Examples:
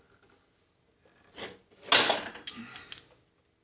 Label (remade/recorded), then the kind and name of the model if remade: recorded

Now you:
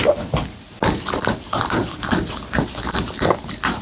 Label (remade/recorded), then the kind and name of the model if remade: recorded